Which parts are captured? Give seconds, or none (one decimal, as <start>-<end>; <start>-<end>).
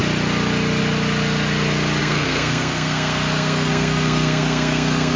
0.0-2.0